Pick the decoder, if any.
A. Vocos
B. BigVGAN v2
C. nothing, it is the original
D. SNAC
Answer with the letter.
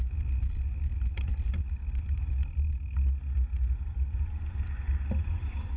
C